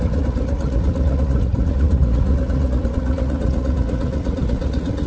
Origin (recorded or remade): remade